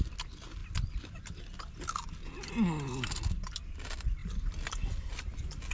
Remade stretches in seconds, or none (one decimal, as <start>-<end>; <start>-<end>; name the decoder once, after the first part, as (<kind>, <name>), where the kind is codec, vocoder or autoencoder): none